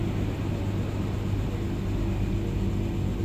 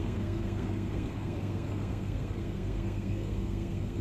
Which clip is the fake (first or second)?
second